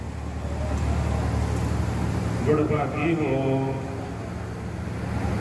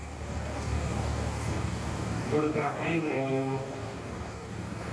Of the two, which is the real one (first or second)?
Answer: first